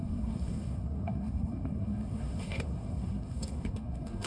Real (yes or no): no